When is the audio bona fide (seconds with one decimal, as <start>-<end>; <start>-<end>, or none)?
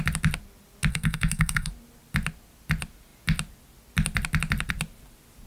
0.0-0.9; 1.7-5.5